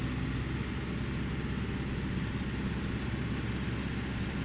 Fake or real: real